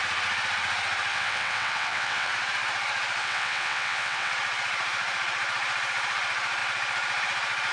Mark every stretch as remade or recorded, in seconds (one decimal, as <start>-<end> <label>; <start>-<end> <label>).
0.0-1.1 recorded; 1.1-2.3 remade; 2.3-3.2 recorded; 3.2-4.3 remade; 4.3-7.7 recorded